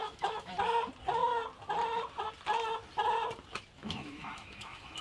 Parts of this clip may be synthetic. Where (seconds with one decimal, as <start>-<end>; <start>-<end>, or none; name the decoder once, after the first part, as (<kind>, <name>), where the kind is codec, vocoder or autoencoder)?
0.0-0.5 (autoencoder, DAC-VAE); 3.8-5.0